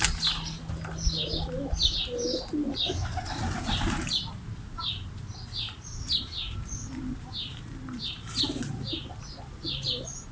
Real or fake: real